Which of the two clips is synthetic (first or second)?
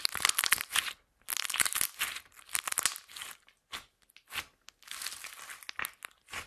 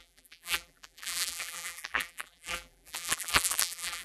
second